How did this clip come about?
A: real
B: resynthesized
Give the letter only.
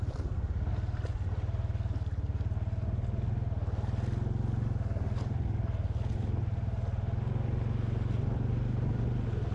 A